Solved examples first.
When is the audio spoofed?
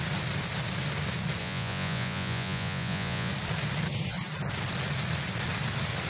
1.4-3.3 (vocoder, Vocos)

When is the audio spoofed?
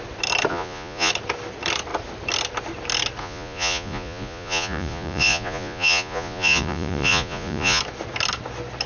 0.5-1.1 (vocoder, Vocos); 3.2-7.8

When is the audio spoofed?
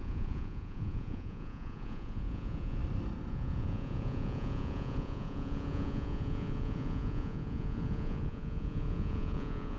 0.0-2.8 (vocoder, Vocos); 3.3-9.8